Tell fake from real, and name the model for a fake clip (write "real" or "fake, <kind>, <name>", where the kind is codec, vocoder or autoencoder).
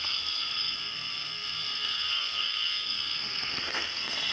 fake, codec, SNAC